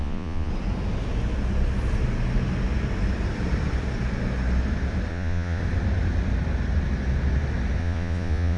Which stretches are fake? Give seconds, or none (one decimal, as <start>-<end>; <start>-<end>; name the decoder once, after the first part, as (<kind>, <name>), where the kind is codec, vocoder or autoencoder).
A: 0.0-0.5 (vocoder, Vocos); 5.1-5.6; 7.8-8.6